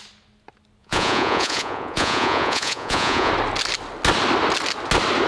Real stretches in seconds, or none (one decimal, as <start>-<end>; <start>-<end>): 0.0-0.8; 3.3-5.3